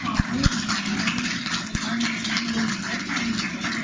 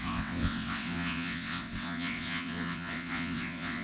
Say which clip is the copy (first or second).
second